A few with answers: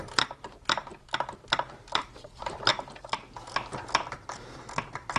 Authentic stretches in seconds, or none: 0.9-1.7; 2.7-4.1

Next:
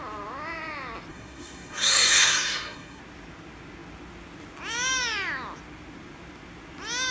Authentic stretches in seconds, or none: 0.0-1.1; 3.0-7.1